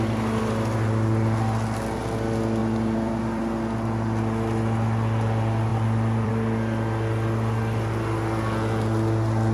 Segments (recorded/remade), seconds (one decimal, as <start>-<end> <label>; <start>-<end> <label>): 0.0-2.6 recorded; 2.6-3.4 remade; 3.4-5.7 recorded; 5.7-6.3 remade; 6.3-9.5 recorded